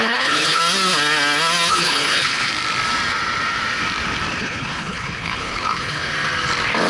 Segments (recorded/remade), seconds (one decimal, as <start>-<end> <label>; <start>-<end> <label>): 0.0-0.6 remade; 0.6-1.7 recorded; 1.7-2.5 remade; 2.5-4.4 recorded; 4.4-6.1 remade; 6.1-6.9 recorded